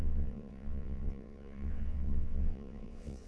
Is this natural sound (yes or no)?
no